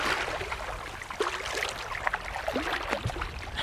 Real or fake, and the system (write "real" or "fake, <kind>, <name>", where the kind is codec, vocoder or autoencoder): real